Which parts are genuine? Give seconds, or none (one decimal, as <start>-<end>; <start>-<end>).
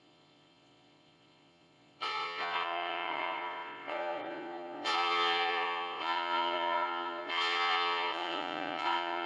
none